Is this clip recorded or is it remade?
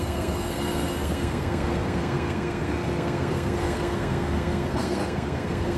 remade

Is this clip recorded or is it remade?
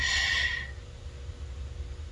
recorded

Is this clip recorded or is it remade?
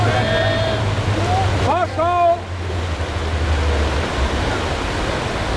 recorded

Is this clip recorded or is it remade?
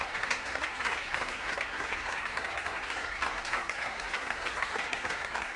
remade